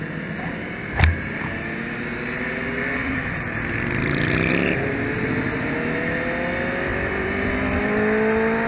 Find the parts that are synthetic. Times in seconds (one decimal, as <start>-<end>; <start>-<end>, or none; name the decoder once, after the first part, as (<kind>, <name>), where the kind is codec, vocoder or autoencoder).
3.0-4.5 (vocoder, BigVGAN v2); 6.9-7.8

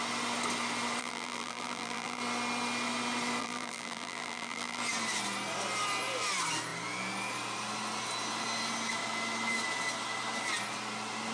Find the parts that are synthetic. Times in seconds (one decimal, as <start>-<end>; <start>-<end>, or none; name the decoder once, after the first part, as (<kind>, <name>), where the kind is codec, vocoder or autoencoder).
1.0-2.2 (vocoder, BigVGAN v2); 3.4-4.8

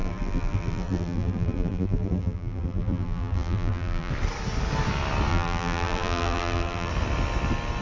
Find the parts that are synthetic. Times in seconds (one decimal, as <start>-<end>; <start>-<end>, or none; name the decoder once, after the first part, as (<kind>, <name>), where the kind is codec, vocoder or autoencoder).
0.0-4.1 (vocoder, BigVGAN v2); 5.3-6.9

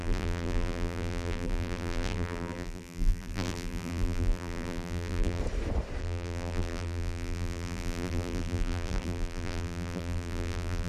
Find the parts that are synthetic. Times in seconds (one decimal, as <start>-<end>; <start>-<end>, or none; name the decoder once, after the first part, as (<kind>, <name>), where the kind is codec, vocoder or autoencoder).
0.0-5.4 (vocoder, BigVGAN v2); 6.0-10.9

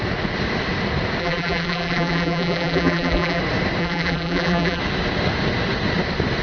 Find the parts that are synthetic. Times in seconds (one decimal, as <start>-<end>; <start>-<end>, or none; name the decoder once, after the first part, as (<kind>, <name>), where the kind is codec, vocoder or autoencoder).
1.2-3.4 (vocoder, BigVGAN v2); 3.8-4.8

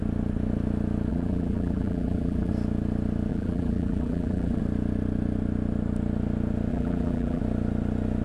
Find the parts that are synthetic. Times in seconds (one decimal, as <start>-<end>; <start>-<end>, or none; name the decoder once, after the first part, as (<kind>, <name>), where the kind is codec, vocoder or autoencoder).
1.1-2.5 (vocoder, BigVGAN v2); 3.3-4.6; 6.7-7.4

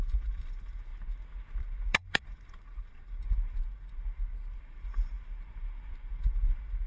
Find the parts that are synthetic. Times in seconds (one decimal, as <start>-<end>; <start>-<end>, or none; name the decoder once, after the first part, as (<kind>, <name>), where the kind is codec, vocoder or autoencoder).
0.0-0.9 (vocoder, BigVGAN v2); 1.6-6.9